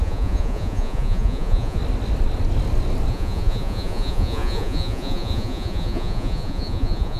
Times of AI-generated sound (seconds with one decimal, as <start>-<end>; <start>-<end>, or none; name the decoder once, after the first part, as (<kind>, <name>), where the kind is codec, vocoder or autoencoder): 0.0-1.8 (vocoder, Vocos); 3.1-7.2